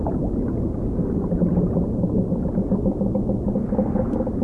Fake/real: real